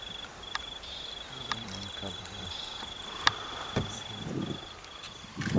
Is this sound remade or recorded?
remade